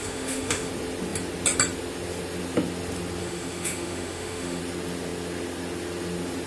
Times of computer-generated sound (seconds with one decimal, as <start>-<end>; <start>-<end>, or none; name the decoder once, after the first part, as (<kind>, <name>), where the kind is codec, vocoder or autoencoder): 0.0-0.7 (autoencoder, DAC-VAE); 3.2-4.6